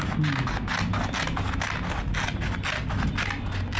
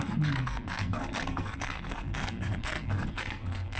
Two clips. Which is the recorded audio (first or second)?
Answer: first